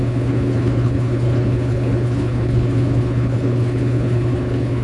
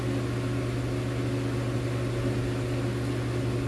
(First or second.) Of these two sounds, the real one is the second